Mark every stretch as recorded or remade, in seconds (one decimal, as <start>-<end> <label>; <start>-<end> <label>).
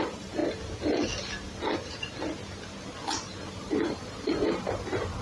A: 0.0-0.4 remade; 0.4-3.5 recorded; 3.5-5.2 remade